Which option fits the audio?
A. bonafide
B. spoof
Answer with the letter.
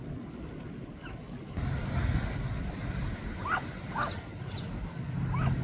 A